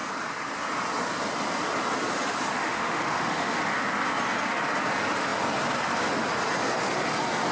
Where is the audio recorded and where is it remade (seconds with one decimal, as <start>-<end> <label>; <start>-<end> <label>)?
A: 0.0-2.6 recorded; 2.6-3.6 remade; 3.6-7.5 recorded